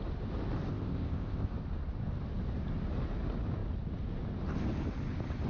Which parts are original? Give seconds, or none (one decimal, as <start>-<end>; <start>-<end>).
0.0-0.7; 1.5-5.5